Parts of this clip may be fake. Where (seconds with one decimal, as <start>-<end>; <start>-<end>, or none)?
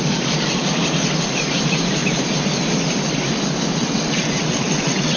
3.8-5.2